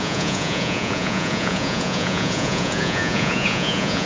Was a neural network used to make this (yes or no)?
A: yes